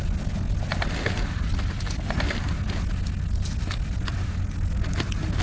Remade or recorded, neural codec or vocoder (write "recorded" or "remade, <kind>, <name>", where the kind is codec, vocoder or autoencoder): recorded